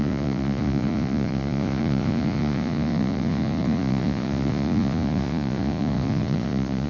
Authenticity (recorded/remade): remade